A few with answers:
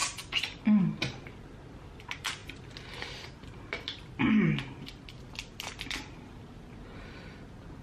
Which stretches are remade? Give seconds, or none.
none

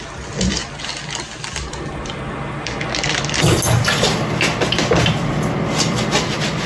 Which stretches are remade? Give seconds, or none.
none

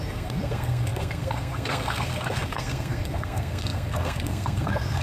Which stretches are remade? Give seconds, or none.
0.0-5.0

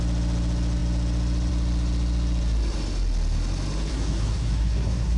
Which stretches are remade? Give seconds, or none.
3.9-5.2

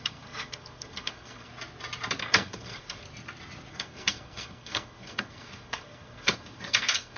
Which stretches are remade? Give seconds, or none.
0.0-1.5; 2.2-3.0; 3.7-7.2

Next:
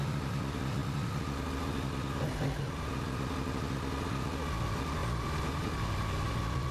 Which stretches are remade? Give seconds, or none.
none

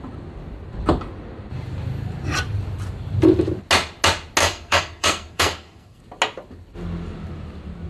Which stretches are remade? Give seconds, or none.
4.4-6.0

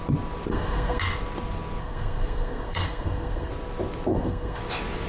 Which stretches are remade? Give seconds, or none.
0.5-1.0; 1.8-3.5; 4.1-4.6